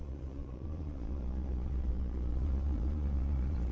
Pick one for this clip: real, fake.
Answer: fake